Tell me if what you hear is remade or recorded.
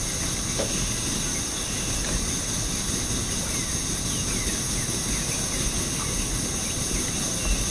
recorded